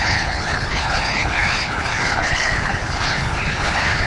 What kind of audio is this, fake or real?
fake